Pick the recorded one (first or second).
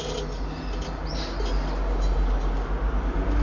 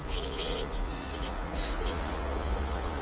first